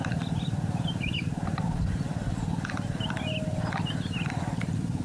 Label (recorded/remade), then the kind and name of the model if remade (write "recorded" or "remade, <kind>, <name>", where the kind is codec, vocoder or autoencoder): recorded